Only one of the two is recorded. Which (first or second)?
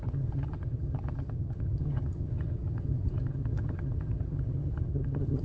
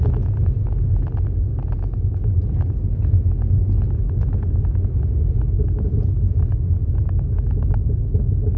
second